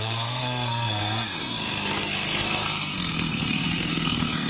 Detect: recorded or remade remade